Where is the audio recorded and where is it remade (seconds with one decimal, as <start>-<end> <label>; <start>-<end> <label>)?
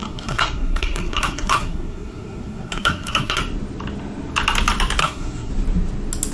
0.0-3.4 remade; 3.4-5.0 recorded; 5.0-5.5 remade; 5.5-6.3 recorded